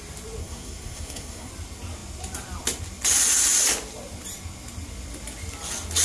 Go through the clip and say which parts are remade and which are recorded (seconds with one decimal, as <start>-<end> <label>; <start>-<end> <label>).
0.0-0.4 recorded; 0.4-1.5 remade; 1.5-6.0 recorded